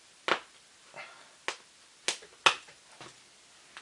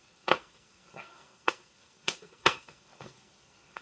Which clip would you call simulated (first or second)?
second